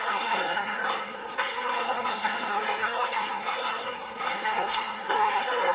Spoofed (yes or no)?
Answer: yes